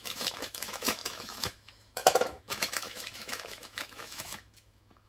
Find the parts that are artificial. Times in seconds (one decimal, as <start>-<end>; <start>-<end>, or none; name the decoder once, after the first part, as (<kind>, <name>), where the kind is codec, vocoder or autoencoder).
0.0-5.1 (autoencoder, DAC-VAE)